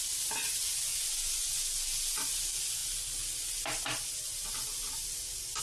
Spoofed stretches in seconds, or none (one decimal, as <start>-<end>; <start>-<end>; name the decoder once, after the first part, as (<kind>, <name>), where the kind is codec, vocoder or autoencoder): 0.9-1.6 (vocoder, Vocos)